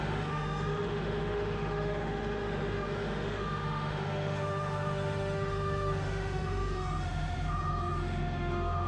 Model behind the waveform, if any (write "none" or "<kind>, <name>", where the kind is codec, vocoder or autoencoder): autoencoder, DAC-VAE